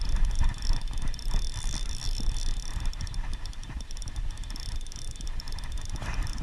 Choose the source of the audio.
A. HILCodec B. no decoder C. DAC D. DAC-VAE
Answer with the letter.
B